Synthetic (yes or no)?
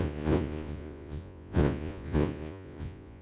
yes